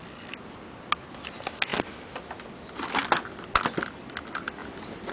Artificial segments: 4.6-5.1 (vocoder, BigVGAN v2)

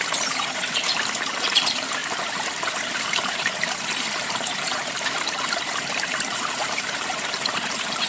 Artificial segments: 0.0-8.1 (vocoder, BigVGAN v2)